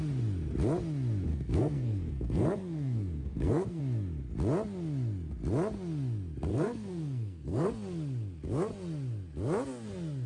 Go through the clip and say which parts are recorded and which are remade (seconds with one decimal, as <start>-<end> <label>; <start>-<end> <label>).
0.0-1.3 recorded; 1.3-3.8 remade; 3.8-6.5 recorded; 6.5-7.7 remade; 7.7-10.3 recorded